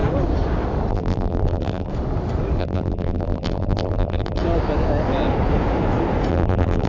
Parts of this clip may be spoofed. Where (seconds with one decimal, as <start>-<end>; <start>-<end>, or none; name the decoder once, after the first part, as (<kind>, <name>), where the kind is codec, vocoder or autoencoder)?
0.9-1.9 (vocoder, BigVGAN v2); 2.6-4.4; 6.3-6.9